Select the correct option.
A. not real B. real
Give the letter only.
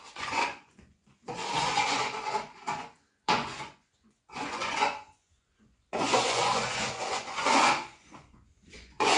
A